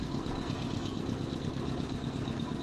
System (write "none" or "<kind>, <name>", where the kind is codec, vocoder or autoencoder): codec, SNAC